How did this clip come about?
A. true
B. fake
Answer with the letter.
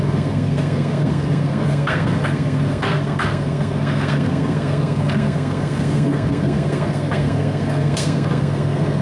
B